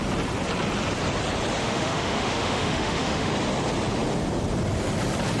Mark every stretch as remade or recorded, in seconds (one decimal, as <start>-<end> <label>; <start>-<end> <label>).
0.0-1.6 recorded; 1.6-3.3 remade; 3.3-5.4 recorded